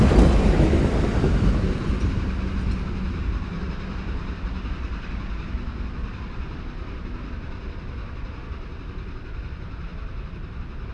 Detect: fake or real real